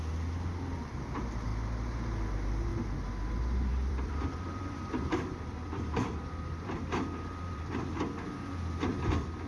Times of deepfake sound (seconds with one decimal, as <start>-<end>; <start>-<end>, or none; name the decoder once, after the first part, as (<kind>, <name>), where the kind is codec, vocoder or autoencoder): 3.7-7.9 (vocoder, BigVGAN v2)